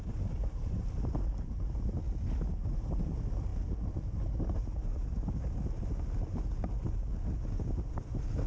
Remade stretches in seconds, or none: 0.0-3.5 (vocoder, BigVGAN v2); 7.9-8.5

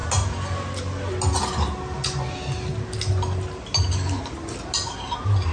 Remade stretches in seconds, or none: none

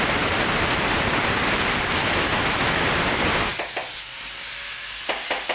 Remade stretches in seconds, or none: none

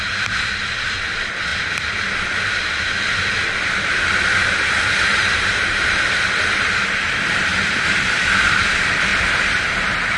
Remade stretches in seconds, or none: 5.1-5.9 (vocoder, BigVGAN v2); 7.5-8.0; 9.1-10.2

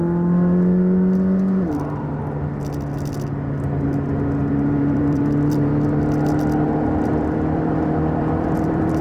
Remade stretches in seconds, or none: 4.5-5.7 (vocoder, BigVGAN v2); 7.1-9.0

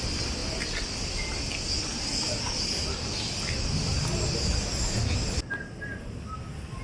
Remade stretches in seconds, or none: none

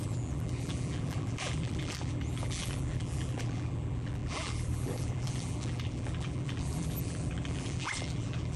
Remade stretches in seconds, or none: 0.0-8.6 (vocoder, BigVGAN v2)